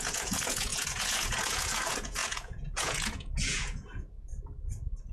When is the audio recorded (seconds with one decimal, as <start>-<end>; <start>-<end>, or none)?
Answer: 4.3-5.1